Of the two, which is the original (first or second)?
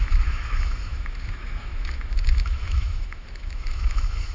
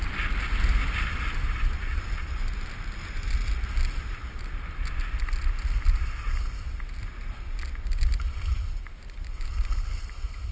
second